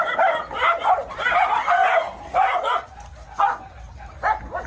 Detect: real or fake real